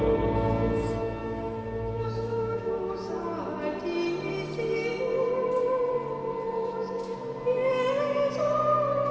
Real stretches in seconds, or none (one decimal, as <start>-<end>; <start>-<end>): 0.0-1.2; 3.1-9.1